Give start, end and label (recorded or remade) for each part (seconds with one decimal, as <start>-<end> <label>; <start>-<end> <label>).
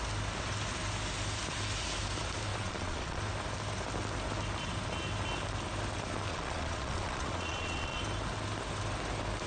0.0-2.5 recorded; 2.5-3.2 remade; 3.2-6.3 recorded; 6.3-8.0 remade; 8.0-9.5 recorded